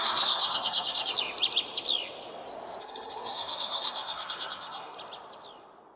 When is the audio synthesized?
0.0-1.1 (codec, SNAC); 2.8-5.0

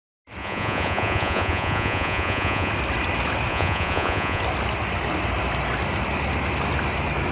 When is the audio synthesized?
0.4-2.7 (vocoder, Vocos); 3.5-4.4

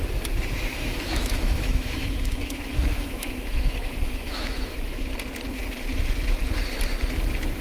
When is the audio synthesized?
0.7-5.1 (autoencoder, DAC-VAE)

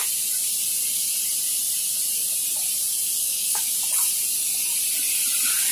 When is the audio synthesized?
3.2-3.7 (codec, DAC)

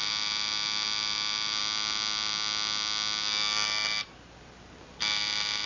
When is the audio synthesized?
none

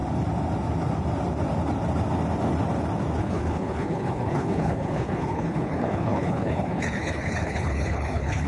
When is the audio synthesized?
3.2-8.5 (codec, HILCodec)

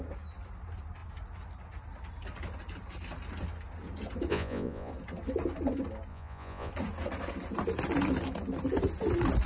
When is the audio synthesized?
4.3-4.9 (vocoder, Vocos); 6.1-6.7